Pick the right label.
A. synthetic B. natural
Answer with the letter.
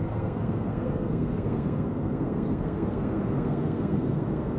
A